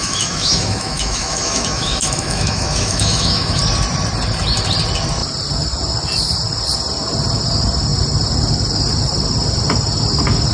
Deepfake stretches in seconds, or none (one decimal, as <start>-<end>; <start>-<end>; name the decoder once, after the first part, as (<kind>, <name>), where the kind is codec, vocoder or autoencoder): 0.0-3.6 (autoencoder, DAC-VAE)